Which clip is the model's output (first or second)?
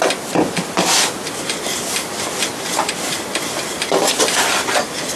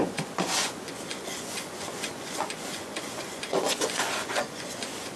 second